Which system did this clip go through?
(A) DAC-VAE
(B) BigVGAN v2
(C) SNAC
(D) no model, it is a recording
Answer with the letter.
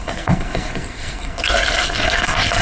C